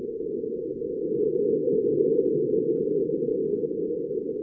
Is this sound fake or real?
fake